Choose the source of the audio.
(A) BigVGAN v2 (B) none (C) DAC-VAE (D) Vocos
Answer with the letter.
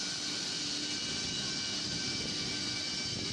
B